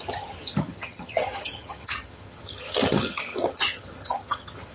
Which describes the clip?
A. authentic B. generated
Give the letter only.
B